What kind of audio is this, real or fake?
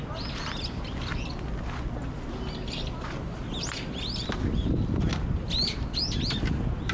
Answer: real